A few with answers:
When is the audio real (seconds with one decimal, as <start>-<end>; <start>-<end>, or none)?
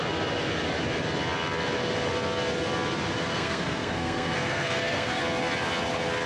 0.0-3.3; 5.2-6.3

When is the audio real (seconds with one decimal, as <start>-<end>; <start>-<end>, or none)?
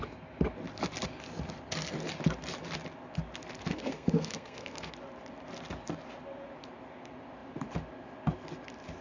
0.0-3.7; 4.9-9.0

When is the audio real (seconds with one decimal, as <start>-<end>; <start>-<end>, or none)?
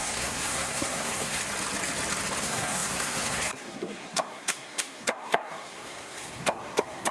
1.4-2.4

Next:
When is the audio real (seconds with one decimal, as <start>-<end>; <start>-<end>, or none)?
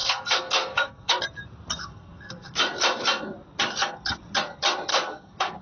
1.2-1.8; 2.6-4.9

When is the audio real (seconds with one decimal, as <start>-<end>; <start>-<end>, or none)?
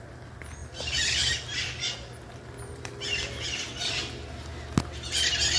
0.0-5.6